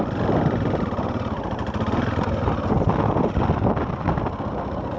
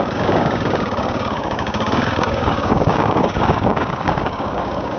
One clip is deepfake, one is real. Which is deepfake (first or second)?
second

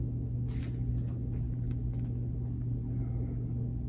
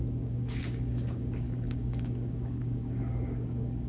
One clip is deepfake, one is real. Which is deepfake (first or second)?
second